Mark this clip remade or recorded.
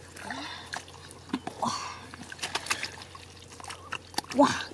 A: recorded